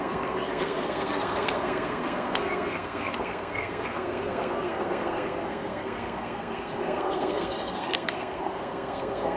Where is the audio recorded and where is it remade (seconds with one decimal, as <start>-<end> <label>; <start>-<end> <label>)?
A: 0.0-9.4 remade